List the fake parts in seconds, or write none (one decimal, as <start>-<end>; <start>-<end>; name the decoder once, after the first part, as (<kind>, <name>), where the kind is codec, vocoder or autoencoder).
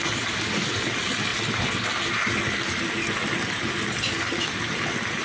none